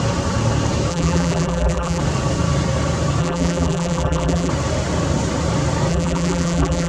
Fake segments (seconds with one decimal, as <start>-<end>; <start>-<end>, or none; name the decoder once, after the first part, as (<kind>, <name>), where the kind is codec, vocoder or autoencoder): 0.9-2.0 (vocoder, BigVGAN v2); 3.2-4.5; 5.9-6.9